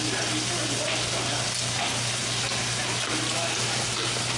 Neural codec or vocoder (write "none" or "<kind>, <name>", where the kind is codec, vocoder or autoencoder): none